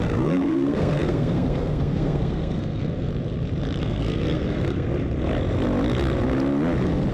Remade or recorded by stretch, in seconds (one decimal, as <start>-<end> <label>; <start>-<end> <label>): 0.0-3.1 remade; 3.1-3.8 recorded; 3.8-4.9 remade; 4.9-7.1 recorded